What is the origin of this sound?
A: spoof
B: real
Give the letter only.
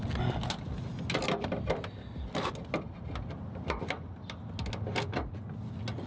B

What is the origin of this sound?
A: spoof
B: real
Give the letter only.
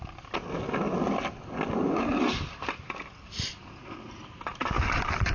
B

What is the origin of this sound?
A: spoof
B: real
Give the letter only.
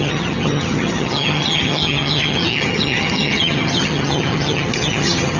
A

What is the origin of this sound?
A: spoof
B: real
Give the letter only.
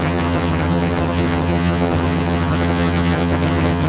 A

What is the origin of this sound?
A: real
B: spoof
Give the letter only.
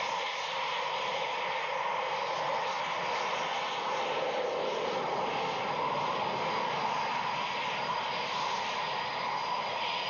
A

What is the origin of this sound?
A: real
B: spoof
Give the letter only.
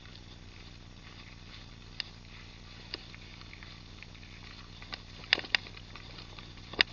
A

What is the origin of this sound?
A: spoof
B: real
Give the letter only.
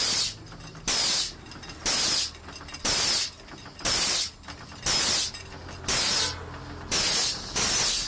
B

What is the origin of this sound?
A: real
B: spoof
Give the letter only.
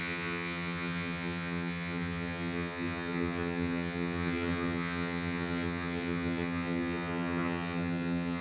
B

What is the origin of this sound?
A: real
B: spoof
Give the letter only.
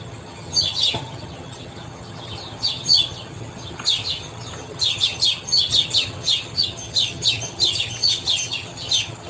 B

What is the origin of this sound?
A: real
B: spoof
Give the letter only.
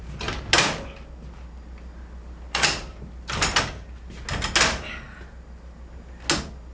A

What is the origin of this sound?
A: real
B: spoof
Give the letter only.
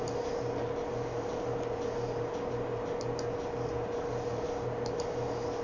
A